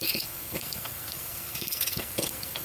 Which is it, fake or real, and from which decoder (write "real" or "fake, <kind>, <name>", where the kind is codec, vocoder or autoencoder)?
fake, codec, SNAC